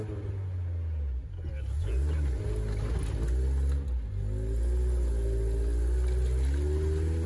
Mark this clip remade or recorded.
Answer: recorded